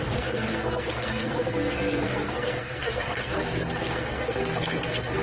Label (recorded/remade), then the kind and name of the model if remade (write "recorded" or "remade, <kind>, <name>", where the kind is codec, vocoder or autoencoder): remade, codec, SNAC